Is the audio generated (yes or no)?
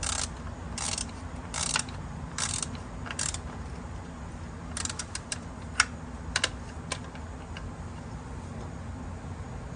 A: no